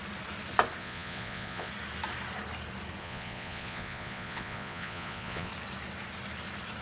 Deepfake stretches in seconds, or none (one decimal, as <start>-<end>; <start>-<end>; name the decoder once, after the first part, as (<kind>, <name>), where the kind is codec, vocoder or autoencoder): 0.8-1.7 (vocoder, Vocos); 3.0-5.5